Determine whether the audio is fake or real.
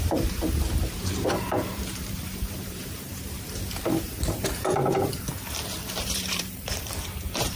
fake